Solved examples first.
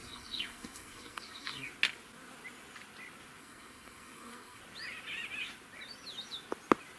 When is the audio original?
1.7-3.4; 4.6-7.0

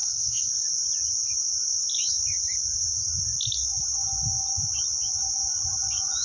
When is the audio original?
0.5-6.2

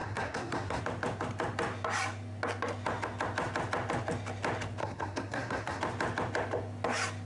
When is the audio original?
0.8-4.8; 5.8-7.3

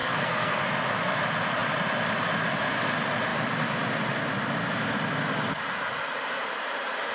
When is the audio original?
0.6-7.1

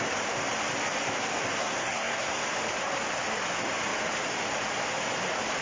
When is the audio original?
0.0-1.6; 2.4-5.6